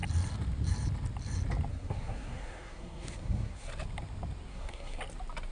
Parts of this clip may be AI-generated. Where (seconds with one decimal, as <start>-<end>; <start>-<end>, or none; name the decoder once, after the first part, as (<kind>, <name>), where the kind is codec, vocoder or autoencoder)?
1.7-3.7 (codec, SNAC); 4.5-5.0